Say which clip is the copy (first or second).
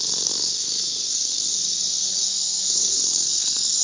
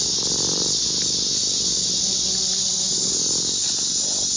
first